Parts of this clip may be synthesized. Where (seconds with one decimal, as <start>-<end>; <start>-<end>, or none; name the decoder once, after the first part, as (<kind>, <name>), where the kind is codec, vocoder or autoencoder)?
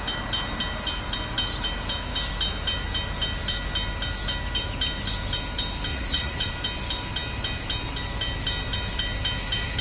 5.9-6.5 (vocoder, Vocos)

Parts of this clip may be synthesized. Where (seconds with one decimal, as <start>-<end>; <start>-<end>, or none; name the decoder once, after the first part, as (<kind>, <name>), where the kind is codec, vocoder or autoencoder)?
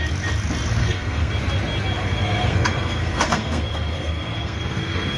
0.8-1.3 (codec, SNAC); 2.0-5.2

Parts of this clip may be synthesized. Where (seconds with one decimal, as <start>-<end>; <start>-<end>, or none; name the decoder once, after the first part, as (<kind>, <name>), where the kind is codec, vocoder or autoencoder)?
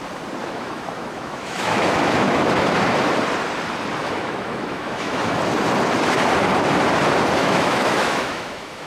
0.4-2.5 (autoencoder, DAC-VAE); 4.0-5.4; 7.4-8.9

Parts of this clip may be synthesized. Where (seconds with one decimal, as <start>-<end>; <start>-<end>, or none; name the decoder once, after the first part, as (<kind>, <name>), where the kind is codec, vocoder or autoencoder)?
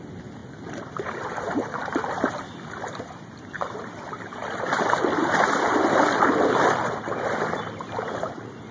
none